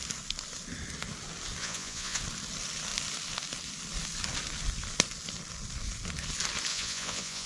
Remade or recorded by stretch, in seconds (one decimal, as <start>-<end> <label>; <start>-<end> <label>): 0.0-1.6 recorded; 1.6-2.2 remade; 2.2-6.7 recorded; 6.7-7.5 remade